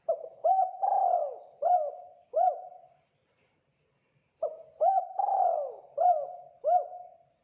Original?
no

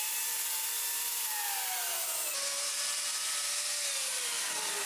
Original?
no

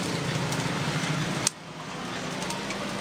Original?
no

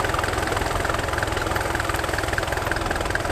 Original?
yes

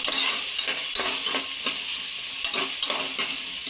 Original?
yes